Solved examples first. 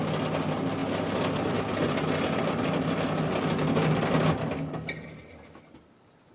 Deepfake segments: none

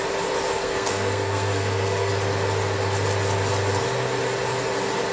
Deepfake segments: 0.6-2.1 (codec, SNAC)

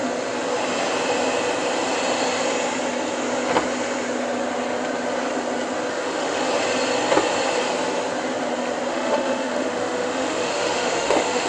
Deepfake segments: 5.9-6.5 (autoencoder, DAC-VAE); 8.9-11.5

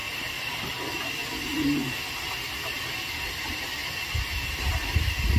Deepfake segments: 0.0-1.2 (vocoder, BigVGAN v2); 3.3-3.8; 4.5-5.4

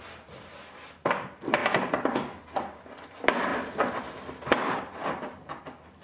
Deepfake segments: none